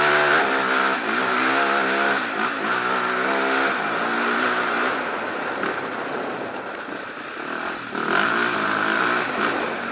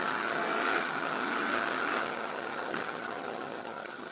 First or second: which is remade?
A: second